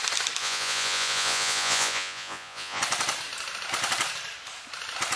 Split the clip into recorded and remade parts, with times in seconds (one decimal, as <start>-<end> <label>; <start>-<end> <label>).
0.0-0.4 recorded; 0.4-2.8 remade; 2.8-5.2 recorded